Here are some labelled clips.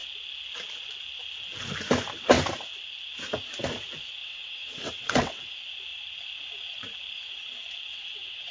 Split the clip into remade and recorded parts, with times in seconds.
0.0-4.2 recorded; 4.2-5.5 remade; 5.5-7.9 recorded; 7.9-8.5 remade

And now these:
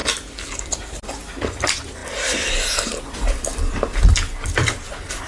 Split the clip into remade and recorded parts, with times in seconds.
0.0-5.3 remade

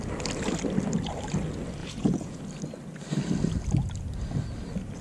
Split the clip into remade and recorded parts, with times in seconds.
0.0-1.8 recorded; 1.8-2.4 remade; 2.4-5.0 recorded

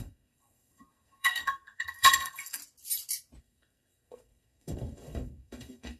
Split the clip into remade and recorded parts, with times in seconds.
0.0-2.6 remade; 2.6-3.4 recorded; 3.4-6.0 remade